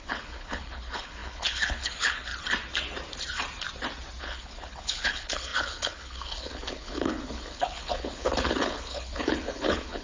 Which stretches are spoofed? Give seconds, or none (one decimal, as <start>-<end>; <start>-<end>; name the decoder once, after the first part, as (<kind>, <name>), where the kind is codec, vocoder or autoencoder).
0.0-2.3 (codec, HILCodec); 4.2-10.0